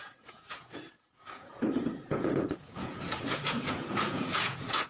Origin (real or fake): fake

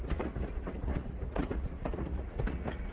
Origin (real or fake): fake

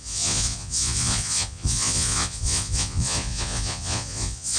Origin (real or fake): fake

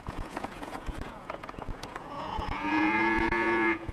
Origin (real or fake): fake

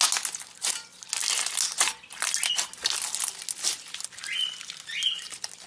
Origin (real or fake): real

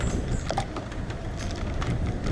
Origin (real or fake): real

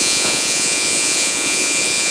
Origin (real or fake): fake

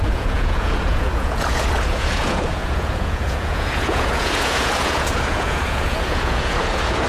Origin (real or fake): fake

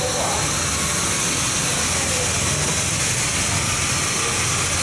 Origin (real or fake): real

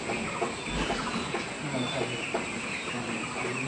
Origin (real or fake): real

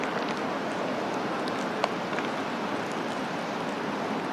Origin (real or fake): real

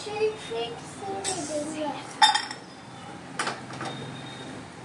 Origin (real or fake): real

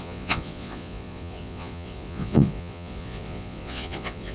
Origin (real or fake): fake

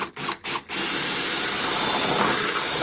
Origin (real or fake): real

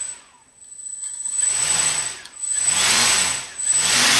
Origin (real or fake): fake